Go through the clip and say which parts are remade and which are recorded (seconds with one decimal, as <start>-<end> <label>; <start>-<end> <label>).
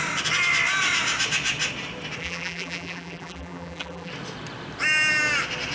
0.0-2.2 recorded; 2.2-4.1 remade; 4.1-5.7 recorded